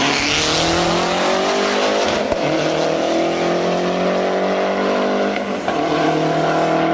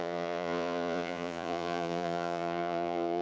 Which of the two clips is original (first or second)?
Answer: first